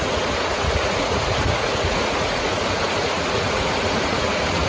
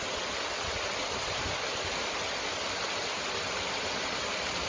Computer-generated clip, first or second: first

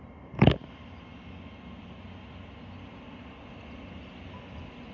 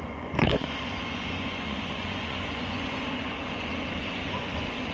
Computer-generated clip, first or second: second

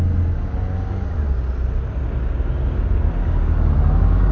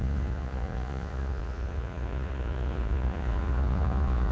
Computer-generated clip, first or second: second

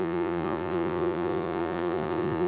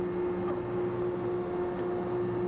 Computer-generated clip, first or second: first